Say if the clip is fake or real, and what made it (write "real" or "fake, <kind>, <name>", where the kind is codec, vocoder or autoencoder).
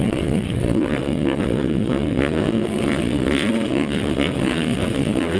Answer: fake, vocoder, WaveNeXt